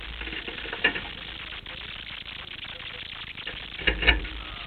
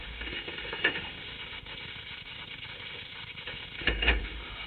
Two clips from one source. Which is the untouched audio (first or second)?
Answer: first